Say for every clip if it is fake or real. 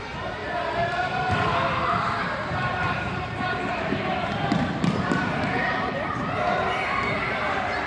fake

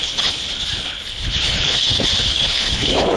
fake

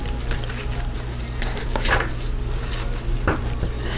real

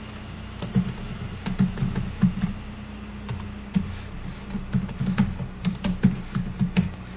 real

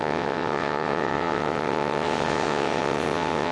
fake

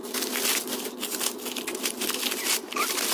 fake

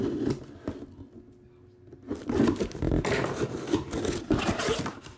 real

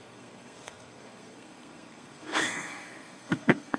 fake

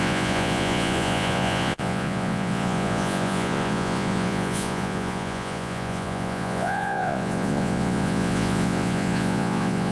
fake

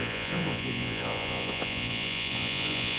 fake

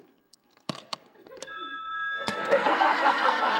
fake